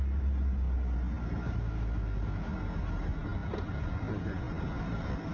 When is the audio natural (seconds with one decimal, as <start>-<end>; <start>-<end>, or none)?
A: 0.0-5.3